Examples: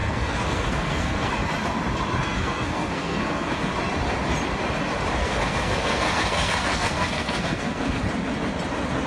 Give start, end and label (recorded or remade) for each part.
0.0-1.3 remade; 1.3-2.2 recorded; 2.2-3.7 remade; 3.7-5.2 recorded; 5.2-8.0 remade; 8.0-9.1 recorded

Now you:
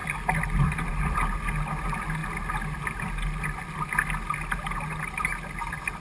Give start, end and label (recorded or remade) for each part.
0.0-6.0 recorded

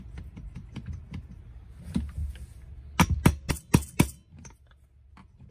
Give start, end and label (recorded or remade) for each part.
0.0-5.5 recorded

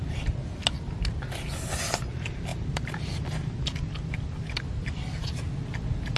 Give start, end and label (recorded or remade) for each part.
0.0-6.2 recorded

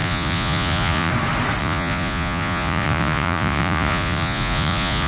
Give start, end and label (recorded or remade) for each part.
0.0-1.1 remade; 1.1-1.6 recorded; 1.6-5.1 remade